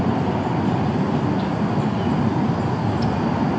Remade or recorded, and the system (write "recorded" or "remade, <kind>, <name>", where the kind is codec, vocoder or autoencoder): recorded